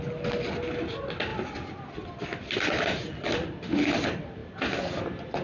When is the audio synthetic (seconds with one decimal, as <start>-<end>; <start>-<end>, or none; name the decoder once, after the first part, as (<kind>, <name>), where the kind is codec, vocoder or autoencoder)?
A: none